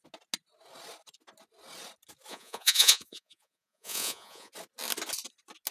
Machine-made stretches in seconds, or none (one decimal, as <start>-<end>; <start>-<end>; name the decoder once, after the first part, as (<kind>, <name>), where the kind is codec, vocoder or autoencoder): 2.3-4.5 (vocoder, Vocos)